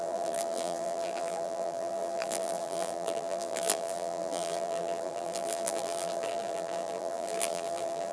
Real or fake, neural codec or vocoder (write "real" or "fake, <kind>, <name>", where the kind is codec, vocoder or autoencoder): fake, vocoder, BigVGAN v2